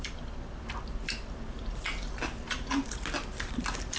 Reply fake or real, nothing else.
real